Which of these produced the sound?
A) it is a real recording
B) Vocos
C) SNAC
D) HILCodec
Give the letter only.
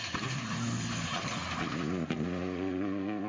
A